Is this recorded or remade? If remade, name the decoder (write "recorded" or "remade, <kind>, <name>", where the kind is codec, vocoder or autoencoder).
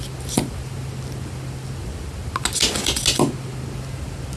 recorded